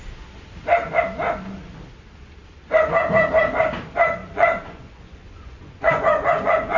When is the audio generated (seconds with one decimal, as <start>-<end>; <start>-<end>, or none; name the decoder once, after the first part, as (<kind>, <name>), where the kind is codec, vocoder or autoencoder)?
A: 4.2-6.8 (vocoder, Vocos)